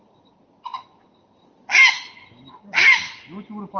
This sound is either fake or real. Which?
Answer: real